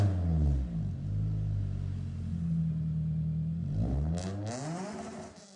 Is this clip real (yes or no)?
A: yes